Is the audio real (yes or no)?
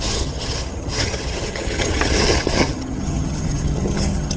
no